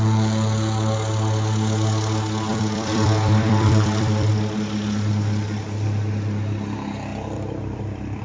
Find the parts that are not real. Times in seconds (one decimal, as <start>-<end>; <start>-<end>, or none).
2.5-4.3; 7.1-8.2